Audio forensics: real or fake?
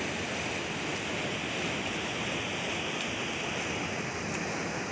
real